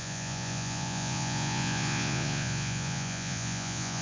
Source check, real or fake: fake